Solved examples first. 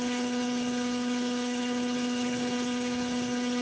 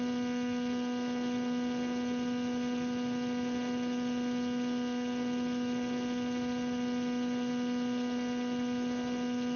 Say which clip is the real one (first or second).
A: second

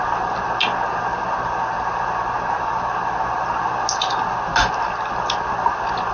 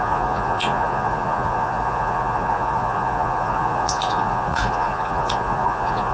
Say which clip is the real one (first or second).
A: first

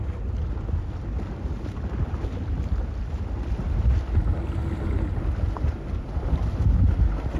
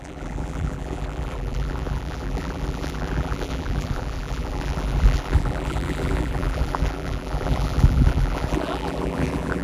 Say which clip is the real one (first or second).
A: first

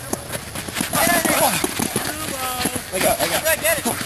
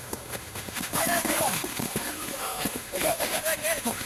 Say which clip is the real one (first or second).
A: first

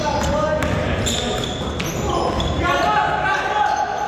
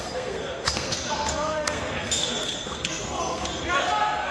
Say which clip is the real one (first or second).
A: first